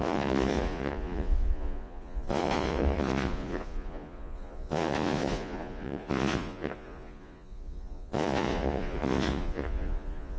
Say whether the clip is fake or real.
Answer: fake